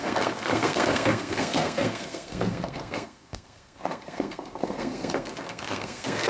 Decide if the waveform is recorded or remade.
remade